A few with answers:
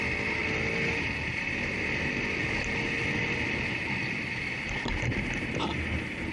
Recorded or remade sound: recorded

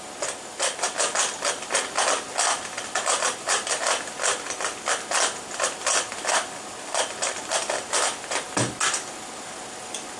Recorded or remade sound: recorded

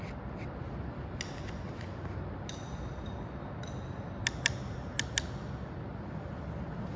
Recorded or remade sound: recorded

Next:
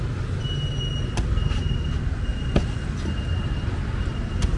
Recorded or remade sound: recorded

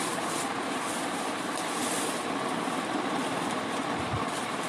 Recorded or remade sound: recorded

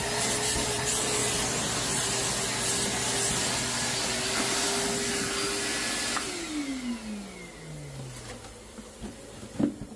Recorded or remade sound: recorded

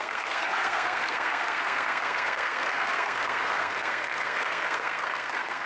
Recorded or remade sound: remade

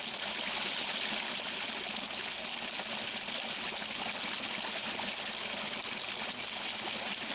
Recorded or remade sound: recorded